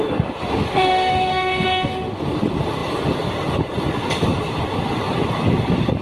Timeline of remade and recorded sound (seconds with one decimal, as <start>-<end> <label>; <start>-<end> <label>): 0.0-0.7 recorded; 0.7-2.1 remade; 2.1-6.0 recorded